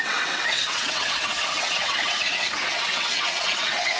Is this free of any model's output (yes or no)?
no